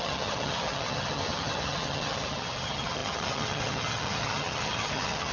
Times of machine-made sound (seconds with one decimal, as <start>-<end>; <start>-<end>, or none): 0.0-5.3